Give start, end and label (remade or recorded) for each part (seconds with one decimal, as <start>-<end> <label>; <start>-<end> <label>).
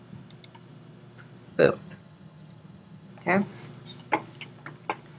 0.0-1.5 recorded; 1.5-3.1 remade; 3.1-5.2 recorded